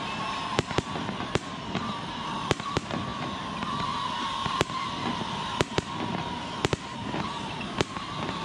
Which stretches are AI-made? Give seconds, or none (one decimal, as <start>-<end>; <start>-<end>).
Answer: none